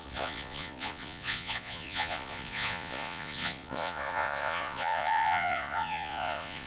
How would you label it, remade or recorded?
remade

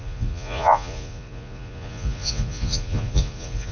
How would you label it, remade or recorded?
remade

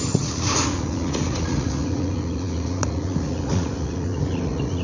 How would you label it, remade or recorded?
remade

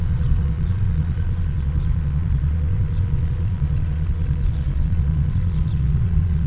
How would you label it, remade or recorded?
remade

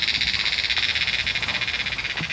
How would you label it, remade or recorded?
recorded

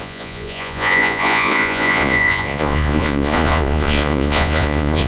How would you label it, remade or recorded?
remade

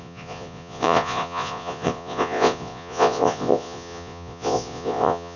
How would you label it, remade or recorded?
remade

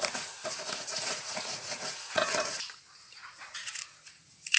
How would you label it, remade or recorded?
remade